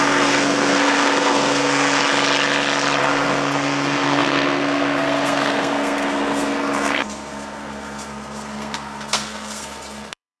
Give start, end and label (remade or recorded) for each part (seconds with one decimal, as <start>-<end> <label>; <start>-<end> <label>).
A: 0.0-2.0 remade; 2.0-3.0 recorded; 3.0-10.4 remade